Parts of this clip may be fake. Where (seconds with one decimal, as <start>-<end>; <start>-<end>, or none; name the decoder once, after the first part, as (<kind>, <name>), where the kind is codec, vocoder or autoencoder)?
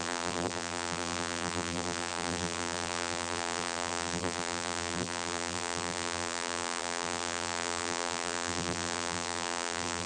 0.0-10.1 (vocoder, BigVGAN v2)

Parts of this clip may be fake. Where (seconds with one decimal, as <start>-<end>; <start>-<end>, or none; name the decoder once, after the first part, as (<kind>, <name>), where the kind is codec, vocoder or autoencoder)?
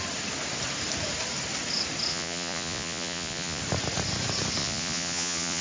2.1-3.6 (vocoder, Vocos); 4.6-5.6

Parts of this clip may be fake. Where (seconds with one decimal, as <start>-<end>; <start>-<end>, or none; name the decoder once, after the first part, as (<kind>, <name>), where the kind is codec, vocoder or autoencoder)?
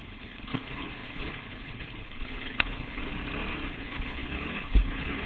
0.0-3.0 (codec, HILCodec); 3.7-5.3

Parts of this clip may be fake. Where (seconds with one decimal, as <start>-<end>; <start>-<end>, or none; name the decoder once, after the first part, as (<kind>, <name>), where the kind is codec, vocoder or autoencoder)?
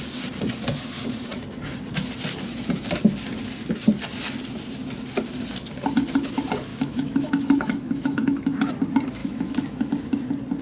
6.7-8.7 (autoencoder, DAC-VAE); 9.2-9.9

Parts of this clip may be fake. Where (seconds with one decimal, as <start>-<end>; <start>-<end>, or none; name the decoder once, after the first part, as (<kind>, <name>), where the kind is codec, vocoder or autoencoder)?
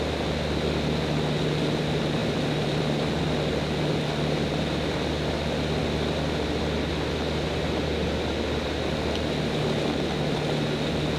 2.2-3.1 (vocoder, BigVGAN v2)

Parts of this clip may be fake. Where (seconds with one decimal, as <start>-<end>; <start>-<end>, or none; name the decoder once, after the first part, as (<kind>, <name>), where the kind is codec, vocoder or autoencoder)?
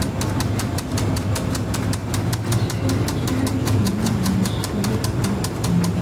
3.6-4.5 (vocoder, Vocos)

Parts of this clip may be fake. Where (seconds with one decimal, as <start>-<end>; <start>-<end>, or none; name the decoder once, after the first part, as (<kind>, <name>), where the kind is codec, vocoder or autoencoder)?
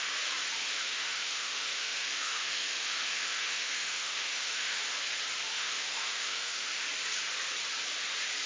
0.6-4.8 (autoencoder, DAC-VAE); 5.5-6.8